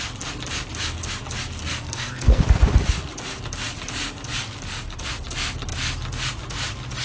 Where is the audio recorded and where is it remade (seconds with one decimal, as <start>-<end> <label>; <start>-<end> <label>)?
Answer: 0.0-1.6 recorded; 1.6-2.4 remade; 2.4-7.0 recorded